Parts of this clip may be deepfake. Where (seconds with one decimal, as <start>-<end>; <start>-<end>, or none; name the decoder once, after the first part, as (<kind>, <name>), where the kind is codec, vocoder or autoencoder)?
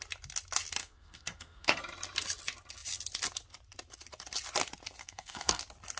0.8-1.8 (codec, SNAC); 5.0-5.6